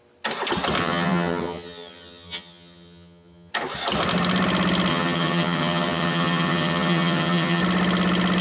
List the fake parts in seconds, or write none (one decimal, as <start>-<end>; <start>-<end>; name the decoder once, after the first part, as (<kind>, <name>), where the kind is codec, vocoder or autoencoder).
0.8-3.5 (vocoder, HiFi-GAN); 4.9-7.6